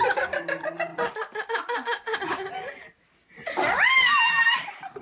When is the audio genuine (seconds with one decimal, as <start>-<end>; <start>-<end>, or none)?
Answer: 0.0-5.0